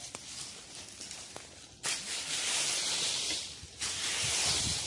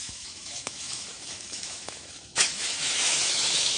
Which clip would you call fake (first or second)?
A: second